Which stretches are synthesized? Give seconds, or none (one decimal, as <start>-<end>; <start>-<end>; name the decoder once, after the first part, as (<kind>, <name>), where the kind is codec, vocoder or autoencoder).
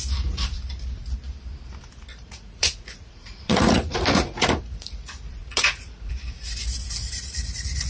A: 2.1-6.1 (vocoder, Vocos); 7.0-7.9